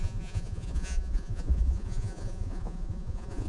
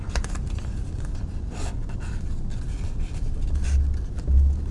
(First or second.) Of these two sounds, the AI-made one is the first